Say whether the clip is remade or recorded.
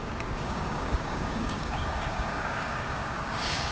remade